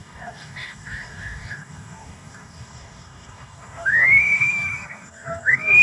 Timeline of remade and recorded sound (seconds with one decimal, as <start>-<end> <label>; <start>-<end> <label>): 0.0-5.8 remade